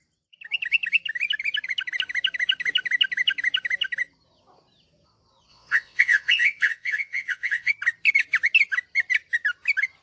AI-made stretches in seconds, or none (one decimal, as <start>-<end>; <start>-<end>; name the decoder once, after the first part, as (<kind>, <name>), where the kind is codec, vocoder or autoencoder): 5.5-7.7 (vocoder, WaveNeXt)